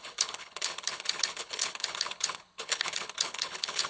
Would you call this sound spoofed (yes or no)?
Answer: yes